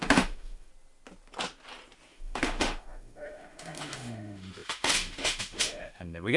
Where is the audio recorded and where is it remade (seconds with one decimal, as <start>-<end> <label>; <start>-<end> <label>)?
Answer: 0.0-0.7 remade; 0.7-2.1 recorded; 2.1-6.4 remade